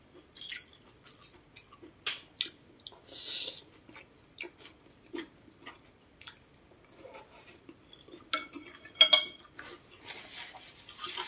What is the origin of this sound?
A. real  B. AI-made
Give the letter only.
A